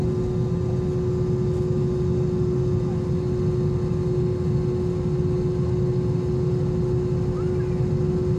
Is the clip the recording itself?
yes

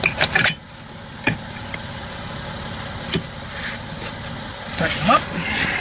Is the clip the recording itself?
yes